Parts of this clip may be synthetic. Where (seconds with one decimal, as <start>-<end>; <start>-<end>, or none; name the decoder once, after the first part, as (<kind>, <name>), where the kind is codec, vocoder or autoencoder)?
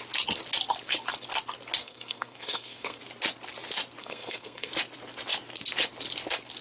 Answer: 1.8-3.0 (codec, SNAC); 4.0-4.7